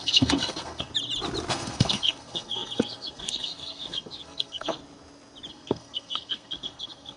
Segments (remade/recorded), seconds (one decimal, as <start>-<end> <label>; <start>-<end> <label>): 0.0-0.9 remade; 0.9-1.5 recorded; 1.5-4.8 remade; 4.8-5.5 recorded; 5.5-7.2 remade